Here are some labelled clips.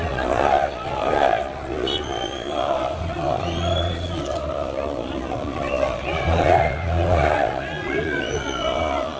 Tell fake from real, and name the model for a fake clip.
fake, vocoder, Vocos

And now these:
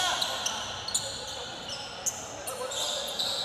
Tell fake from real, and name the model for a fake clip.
real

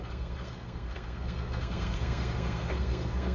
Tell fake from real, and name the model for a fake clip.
fake, codec, SNAC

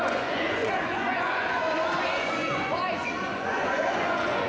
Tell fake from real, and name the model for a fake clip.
fake, vocoder, Vocos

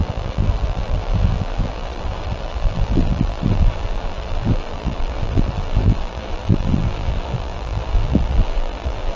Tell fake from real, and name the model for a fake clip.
fake, vocoder, BigVGAN v2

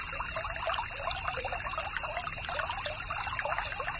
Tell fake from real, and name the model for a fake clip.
real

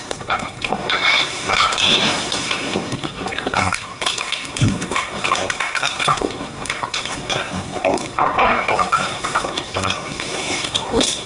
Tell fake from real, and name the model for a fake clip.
fake, codec, SNAC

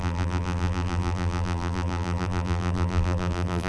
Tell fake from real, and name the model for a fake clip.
fake, vocoder, BigVGAN v2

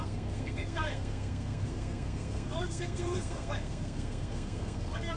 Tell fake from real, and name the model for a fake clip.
fake, codec, SNAC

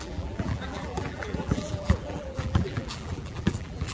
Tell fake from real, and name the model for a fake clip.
fake, vocoder, BigVGAN v2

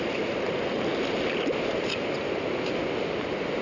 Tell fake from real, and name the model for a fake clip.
real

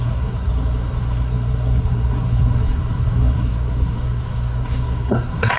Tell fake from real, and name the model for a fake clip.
fake, codec, SNAC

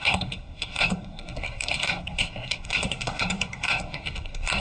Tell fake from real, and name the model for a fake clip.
fake, codec, SNAC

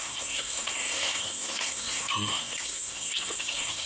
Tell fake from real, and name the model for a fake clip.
fake, codec, SNAC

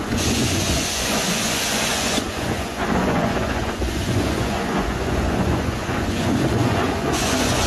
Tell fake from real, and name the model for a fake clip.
fake, vocoder, Vocos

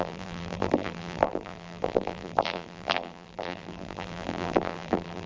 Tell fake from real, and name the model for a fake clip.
fake, vocoder, BigVGAN v2